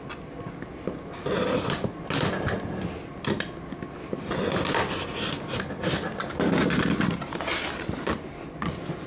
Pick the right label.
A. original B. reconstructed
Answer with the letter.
A